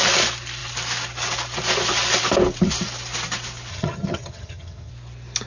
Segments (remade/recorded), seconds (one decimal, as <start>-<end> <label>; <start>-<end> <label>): 0.0-3.7 recorded; 3.7-4.9 remade; 4.9-5.5 recorded